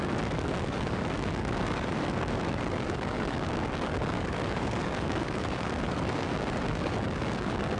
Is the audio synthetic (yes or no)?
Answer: yes